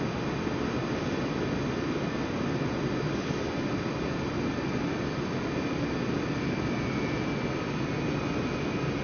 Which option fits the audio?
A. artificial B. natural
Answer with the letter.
B